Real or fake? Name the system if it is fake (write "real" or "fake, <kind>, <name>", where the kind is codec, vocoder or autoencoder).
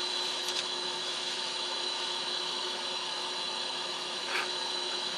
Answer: fake, autoencoder, DAC-VAE